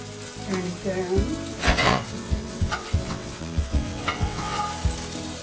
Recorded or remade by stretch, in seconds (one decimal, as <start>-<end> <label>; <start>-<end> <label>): 0.0-1.5 recorded; 1.5-4.6 remade; 4.6-5.4 recorded